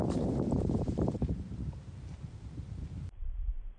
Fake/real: fake